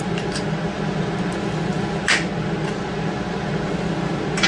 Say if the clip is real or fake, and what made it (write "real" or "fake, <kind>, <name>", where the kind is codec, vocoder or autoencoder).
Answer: real